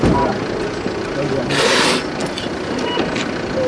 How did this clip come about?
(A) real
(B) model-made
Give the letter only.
A